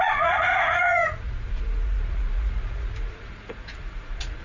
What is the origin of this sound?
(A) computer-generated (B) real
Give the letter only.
A